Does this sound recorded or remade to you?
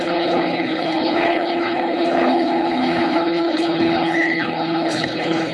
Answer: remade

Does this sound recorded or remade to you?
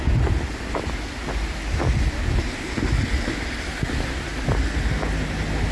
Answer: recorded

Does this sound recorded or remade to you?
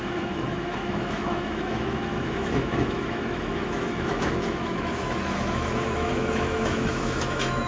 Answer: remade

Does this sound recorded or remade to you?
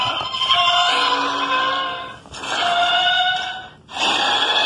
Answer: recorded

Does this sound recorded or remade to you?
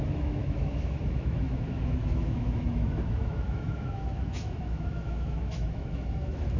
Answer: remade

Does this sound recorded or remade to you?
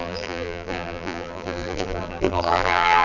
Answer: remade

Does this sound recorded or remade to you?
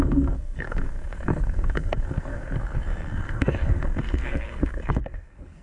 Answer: remade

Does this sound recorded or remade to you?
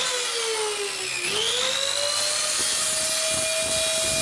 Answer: recorded